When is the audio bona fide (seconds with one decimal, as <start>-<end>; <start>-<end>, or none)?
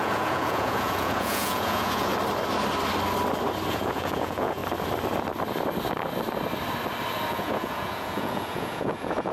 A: 2.1-3.7; 4.6-7.3